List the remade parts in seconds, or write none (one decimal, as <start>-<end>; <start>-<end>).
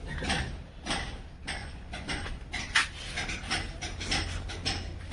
1.6-2.4